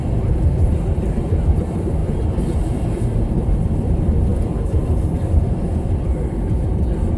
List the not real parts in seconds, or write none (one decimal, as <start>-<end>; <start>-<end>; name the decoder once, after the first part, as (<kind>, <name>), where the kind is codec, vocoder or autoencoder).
0.0-2.0 (vocoder, BigVGAN v2); 2.7-7.2